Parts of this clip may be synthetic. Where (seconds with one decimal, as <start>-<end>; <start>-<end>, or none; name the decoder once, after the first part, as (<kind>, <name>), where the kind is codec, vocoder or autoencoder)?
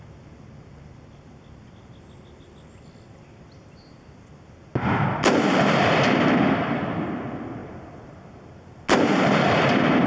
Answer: none